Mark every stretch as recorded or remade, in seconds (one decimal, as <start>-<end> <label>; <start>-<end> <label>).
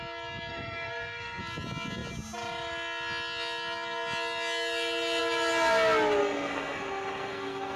0.0-0.5 recorded; 0.5-1.4 remade; 1.4-6.2 recorded; 6.2-7.8 remade